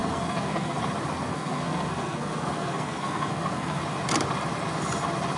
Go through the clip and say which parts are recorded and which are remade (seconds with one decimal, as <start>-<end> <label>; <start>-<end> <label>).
0.0-0.8 remade; 0.8-1.3 recorded; 1.3-3.8 remade; 3.8-5.4 recorded